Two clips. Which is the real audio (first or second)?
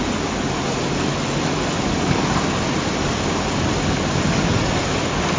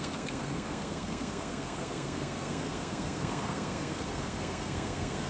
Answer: first